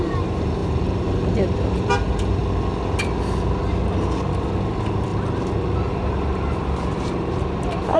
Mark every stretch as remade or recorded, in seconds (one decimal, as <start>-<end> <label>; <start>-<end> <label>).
0.0-2.4 remade; 2.4-4.4 recorded; 4.4-5.1 remade; 5.1-5.9 recorded; 5.9-8.0 remade